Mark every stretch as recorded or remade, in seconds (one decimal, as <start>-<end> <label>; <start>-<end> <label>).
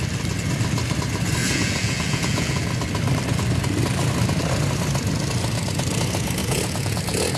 0.0-1.4 recorded; 1.4-2.7 remade; 2.7-6.4 recorded; 6.4-7.0 remade; 7.0-7.4 recorded